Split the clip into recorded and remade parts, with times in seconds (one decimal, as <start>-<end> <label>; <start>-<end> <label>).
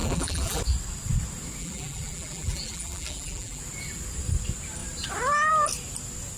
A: 0.0-0.6 remade; 0.6-1.6 recorded; 1.6-3.6 remade; 3.6-6.4 recorded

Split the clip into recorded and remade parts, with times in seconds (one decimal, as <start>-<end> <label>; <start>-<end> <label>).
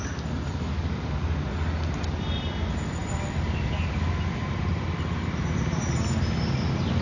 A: 0.0-7.0 recorded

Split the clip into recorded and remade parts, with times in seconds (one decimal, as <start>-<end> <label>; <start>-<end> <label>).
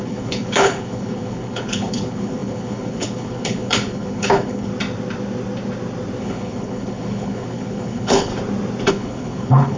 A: 0.0-4.7 remade; 4.7-6.2 recorded; 6.2-8.3 remade; 8.3-8.9 recorded; 8.9-9.8 remade